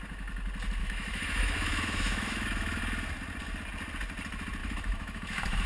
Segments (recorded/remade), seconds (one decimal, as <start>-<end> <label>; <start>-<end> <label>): 0.0-0.8 recorded; 0.8-2.8 remade; 2.8-4.6 recorded; 4.6-5.7 remade

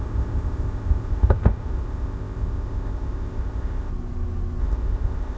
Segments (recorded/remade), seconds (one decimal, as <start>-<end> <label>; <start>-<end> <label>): 0.0-3.9 remade; 3.9-4.6 recorded; 4.6-5.4 remade

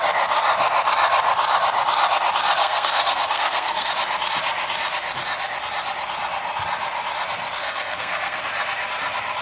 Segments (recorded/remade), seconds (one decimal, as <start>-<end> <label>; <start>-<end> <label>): 0.0-2.6 recorded; 2.6-3.9 remade; 3.9-7.6 recorded; 7.6-8.4 remade; 8.4-9.4 recorded

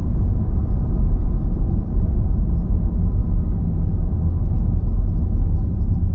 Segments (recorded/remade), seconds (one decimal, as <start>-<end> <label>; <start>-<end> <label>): 0.0-2.0 remade; 2.0-6.1 recorded